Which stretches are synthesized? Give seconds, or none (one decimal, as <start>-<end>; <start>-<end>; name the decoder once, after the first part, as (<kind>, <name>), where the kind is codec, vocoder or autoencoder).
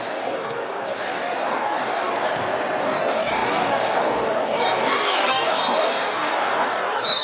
0.0-2.1 (codec, DAC); 2.8-7.2